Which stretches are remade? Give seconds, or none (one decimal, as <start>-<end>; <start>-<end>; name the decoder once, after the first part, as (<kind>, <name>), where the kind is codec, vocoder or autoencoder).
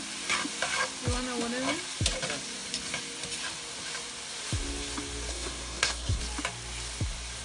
5.3-6.2 (codec, SNAC)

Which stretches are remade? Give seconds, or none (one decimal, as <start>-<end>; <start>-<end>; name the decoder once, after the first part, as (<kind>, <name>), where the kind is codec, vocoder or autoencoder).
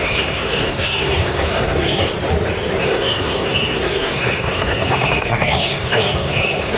0.0-2.1 (codec, SNAC); 2.8-6.8